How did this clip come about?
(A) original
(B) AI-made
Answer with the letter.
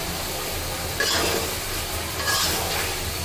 A